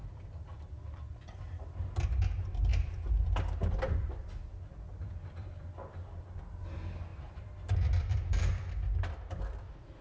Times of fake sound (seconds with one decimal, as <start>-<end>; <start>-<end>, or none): 7.1-8.7